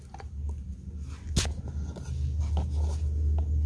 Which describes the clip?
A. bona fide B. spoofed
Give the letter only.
A